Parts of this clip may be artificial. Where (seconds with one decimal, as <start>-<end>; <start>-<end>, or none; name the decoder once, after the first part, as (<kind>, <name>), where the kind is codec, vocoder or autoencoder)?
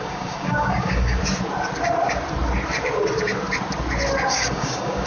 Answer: 0.0-1.2 (codec, DAC); 4.3-5.1